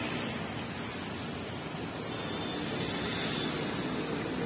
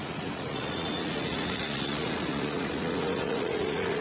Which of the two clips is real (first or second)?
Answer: first